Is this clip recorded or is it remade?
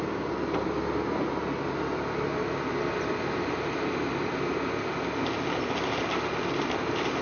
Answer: recorded